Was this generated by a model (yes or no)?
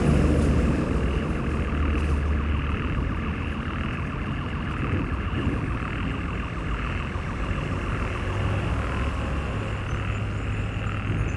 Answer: no